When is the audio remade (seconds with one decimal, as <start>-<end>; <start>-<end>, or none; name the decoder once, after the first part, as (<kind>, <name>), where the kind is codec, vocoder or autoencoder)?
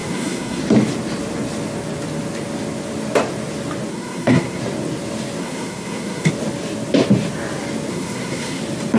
0.0-0.6 (codec, SNAC); 3.9-4.6; 5.4-6.3; 7.9-8.6